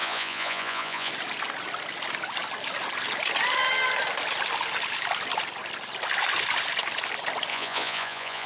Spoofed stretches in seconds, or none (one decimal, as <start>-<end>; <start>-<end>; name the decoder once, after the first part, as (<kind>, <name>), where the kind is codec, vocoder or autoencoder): 0.0-1.1 (vocoder, Vocos); 7.5-8.5